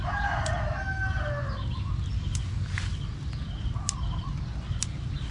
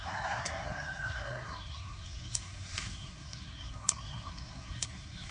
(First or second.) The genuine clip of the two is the first